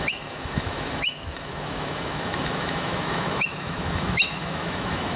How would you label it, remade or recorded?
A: remade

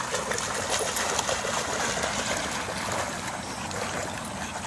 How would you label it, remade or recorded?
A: recorded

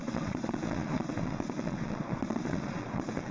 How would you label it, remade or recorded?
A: remade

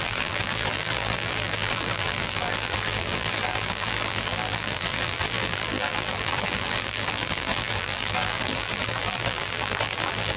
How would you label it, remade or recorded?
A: remade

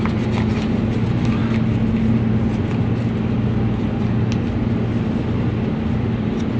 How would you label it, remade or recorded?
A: recorded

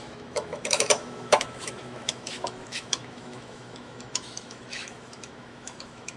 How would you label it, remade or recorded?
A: remade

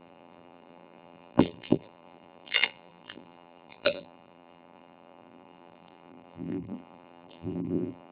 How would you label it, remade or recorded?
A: remade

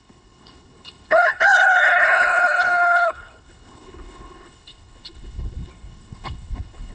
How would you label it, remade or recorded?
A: remade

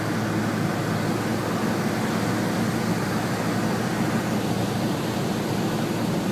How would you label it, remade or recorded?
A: recorded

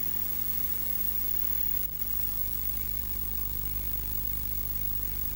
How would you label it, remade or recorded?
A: remade